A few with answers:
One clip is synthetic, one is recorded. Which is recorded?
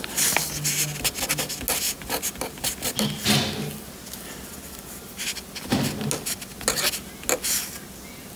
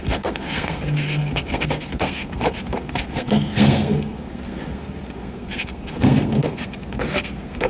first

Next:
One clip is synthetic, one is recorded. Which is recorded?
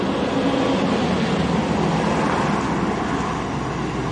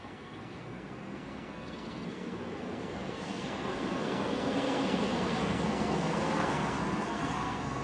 first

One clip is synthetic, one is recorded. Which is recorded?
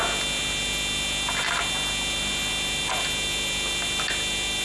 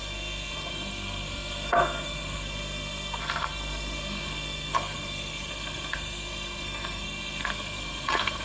first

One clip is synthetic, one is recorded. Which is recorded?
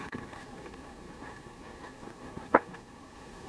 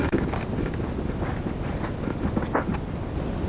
second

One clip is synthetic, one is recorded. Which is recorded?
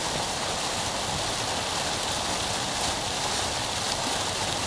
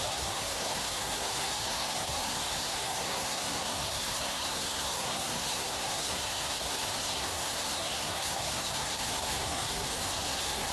first